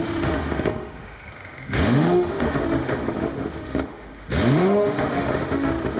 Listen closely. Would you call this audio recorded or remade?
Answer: remade